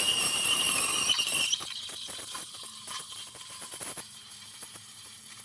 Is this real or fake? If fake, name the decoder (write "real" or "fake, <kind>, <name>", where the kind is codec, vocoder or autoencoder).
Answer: fake, vocoder, BigVGAN v2